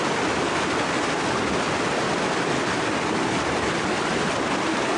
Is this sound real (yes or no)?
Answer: yes